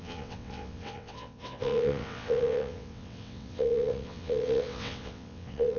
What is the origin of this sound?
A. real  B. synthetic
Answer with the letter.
B